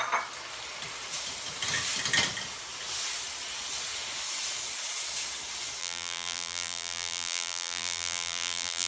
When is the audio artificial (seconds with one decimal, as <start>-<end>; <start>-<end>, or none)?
5.8-8.9